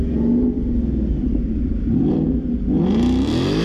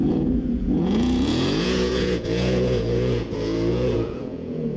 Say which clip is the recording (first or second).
first